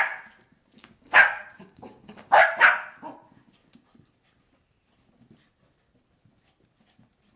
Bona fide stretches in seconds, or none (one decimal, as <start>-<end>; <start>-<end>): 0.0-0.8; 2.4-7.4